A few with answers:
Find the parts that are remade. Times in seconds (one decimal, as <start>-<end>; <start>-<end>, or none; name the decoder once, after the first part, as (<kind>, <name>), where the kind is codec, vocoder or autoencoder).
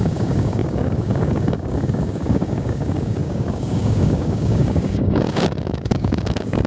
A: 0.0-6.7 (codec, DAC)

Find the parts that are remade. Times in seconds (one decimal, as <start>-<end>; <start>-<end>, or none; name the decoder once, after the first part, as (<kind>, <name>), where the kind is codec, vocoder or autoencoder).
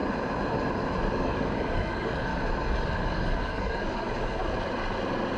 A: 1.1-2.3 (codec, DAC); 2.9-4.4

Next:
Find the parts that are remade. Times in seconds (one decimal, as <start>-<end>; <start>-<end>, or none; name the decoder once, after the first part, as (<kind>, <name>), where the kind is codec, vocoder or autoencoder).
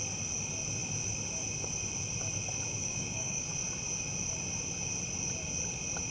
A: 2.8-3.5 (codec, DAC)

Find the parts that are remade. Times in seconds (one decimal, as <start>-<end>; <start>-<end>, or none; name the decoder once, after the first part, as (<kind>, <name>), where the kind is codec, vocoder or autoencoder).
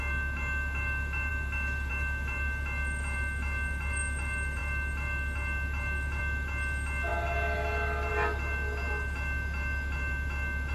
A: none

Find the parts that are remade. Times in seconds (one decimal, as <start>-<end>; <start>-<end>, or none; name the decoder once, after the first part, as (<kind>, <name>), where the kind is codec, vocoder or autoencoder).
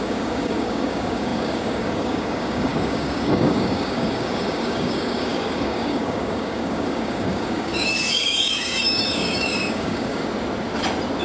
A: 0.0-10.2 (codec, DAC)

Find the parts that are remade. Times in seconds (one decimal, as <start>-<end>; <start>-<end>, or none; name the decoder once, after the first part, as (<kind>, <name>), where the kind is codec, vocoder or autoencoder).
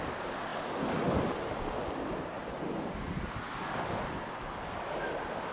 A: none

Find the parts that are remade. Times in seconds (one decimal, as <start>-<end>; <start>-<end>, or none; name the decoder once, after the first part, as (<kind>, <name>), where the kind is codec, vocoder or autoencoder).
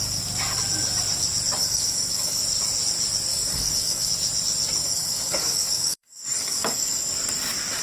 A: 1.6-2.4 (codec, DAC); 3.3-4.1; 4.8-7.1